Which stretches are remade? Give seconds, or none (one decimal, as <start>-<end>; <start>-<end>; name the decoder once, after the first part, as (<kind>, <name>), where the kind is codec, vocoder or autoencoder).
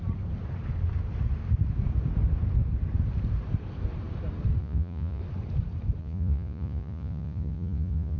4.6-5.2 (vocoder, Vocos); 6.0-8.2